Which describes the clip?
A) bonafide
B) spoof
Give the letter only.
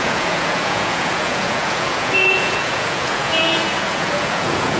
B